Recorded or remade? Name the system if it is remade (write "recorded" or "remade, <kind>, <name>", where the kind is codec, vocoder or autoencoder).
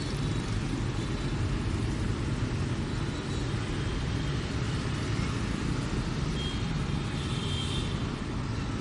recorded